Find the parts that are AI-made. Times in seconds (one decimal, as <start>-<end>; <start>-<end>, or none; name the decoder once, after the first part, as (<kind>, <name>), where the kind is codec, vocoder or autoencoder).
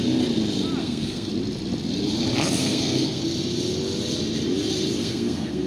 0.8-1.3 (codec, SNAC); 2.6-3.2; 5.0-5.7